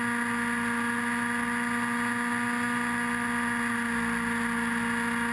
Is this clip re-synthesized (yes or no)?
no